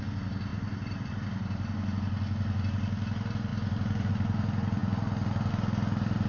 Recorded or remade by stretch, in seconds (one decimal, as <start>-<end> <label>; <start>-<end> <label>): 0.0-0.5 recorded; 0.5-1.1 remade; 1.1-6.3 recorded